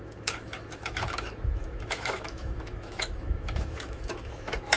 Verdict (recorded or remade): remade